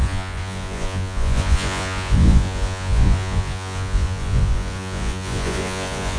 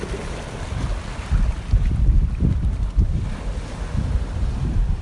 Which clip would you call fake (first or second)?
first